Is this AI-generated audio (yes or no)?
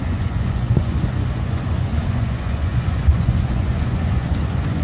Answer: yes